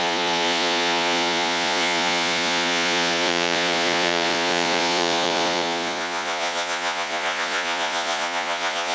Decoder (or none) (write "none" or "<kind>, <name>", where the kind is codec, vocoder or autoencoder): vocoder, Vocos